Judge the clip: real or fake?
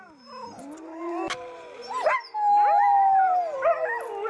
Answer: real